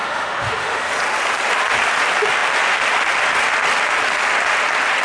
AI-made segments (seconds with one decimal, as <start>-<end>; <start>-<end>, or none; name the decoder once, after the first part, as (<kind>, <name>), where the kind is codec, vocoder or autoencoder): 0.0-0.9 (autoencoder, DAC-VAE)